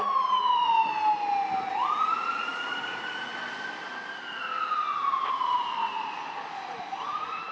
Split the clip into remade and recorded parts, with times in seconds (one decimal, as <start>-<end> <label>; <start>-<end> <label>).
0.0-1.0 remade; 1.0-1.7 recorded; 1.7-3.3 remade; 3.3-5.3 recorded; 5.3-7.5 remade